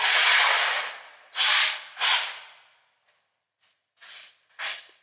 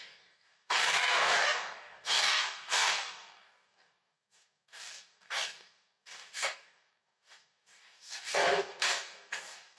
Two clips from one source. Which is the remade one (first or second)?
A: second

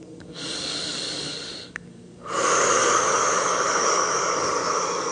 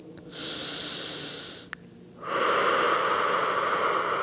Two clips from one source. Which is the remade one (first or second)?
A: first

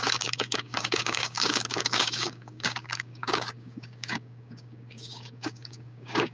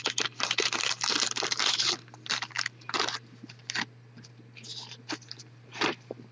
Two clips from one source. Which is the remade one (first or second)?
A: first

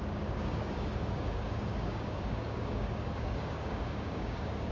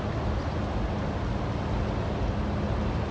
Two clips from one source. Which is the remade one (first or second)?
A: first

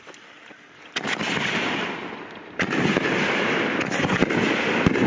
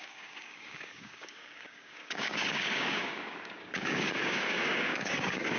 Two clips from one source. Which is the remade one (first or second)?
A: second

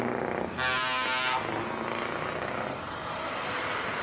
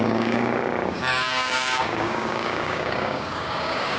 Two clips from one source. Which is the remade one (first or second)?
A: second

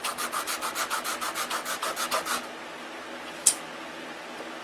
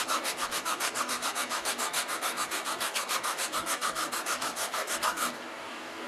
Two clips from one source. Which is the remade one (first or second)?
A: second